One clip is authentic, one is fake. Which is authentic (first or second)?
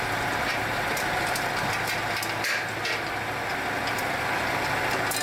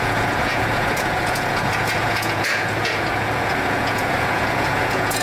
first